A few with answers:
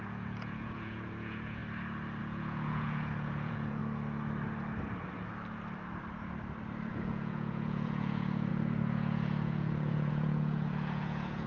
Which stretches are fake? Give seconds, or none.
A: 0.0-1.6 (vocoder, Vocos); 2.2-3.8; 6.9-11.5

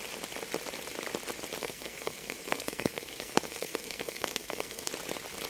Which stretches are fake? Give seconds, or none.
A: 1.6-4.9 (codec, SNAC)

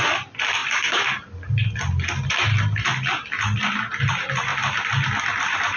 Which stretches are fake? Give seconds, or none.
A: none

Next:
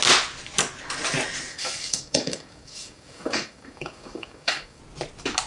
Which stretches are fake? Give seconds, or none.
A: 1.5-4.8 (codec, DAC)

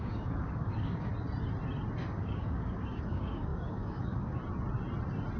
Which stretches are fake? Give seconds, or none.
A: 0.0-1.1 (codec, DAC); 2.0-4.4

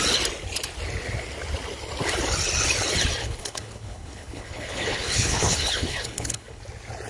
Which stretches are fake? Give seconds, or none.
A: 3.2-6.6 (codec, HILCodec)